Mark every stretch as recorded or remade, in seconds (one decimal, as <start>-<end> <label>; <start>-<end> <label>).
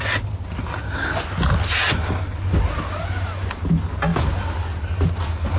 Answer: 0.0-5.6 recorded